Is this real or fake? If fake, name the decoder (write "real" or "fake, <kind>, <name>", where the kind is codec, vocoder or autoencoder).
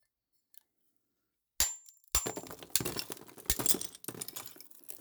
real